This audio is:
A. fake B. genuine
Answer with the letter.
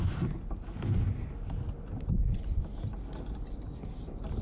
B